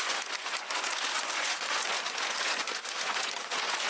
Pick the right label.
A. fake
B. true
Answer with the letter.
A